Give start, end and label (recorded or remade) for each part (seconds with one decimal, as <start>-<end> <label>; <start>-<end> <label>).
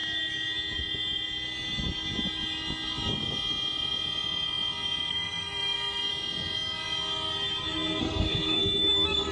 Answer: 0.0-5.1 recorded; 5.1-6.1 remade; 6.1-8.0 recorded; 8.0-9.3 remade